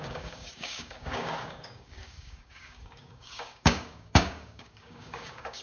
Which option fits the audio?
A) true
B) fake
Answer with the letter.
B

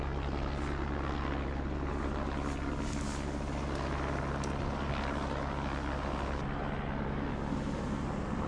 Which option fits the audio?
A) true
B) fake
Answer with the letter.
A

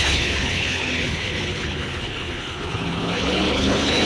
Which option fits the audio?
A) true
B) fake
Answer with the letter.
B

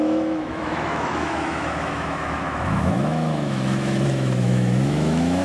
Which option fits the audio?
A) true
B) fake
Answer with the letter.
B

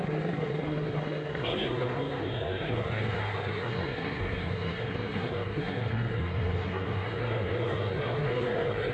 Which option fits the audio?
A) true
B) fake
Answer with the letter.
B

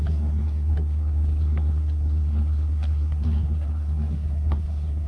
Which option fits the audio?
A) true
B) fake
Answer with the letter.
B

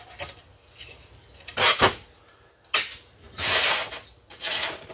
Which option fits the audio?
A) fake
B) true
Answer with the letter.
B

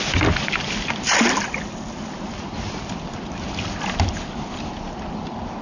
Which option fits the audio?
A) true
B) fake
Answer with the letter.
A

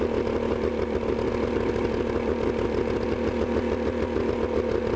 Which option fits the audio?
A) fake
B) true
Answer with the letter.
B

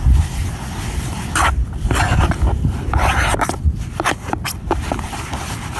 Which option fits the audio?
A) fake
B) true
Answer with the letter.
A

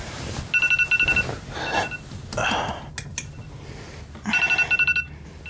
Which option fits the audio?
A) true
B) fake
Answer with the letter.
A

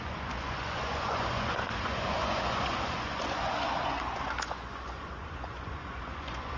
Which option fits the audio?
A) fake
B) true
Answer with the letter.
A